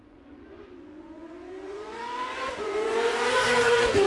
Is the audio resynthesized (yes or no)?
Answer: yes